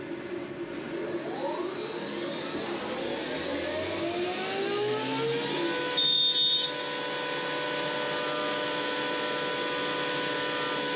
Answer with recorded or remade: recorded